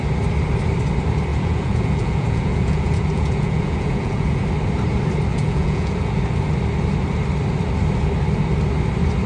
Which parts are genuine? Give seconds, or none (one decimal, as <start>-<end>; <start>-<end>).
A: 0.0-1.3; 4.4-5.3; 6.2-9.3